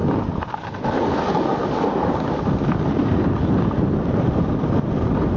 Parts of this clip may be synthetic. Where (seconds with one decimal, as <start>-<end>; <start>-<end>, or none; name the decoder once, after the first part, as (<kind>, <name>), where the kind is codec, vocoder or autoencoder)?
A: none